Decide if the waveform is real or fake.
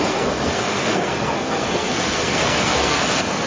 fake